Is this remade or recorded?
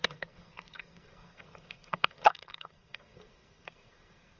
remade